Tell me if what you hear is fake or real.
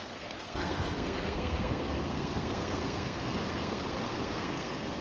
fake